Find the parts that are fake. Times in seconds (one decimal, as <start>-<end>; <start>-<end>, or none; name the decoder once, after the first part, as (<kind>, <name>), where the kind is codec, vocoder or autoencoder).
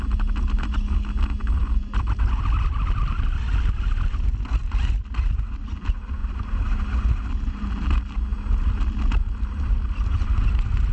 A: none